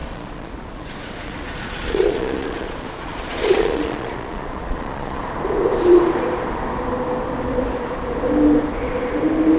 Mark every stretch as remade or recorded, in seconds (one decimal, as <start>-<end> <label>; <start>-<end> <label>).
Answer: 0.0-5.2 remade; 5.2-9.6 recorded